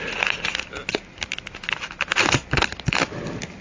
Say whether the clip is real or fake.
real